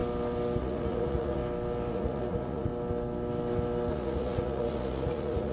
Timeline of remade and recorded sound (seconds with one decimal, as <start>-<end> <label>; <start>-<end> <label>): 0.0-0.6 recorded; 0.6-1.4 remade; 1.4-1.9 recorded; 1.9-2.7 remade; 2.7-3.9 recorded; 3.9-5.5 remade